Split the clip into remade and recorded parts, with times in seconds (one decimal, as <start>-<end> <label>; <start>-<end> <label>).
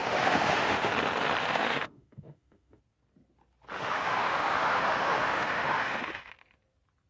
0.0-0.9 remade; 0.9-1.4 recorded; 1.4-2.8 remade; 2.8-3.7 recorded; 3.7-6.3 remade; 6.3-7.1 recorded